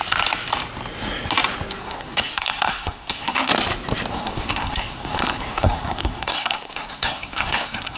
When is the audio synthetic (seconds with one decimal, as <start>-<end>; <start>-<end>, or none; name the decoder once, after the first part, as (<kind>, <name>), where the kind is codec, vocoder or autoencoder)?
1.8-3.5 (codec, SNAC); 4.1-8.0